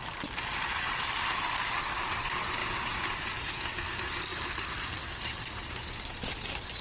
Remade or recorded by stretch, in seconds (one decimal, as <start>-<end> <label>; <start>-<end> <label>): 0.0-2.6 recorded; 2.6-3.8 remade; 3.8-6.8 recorded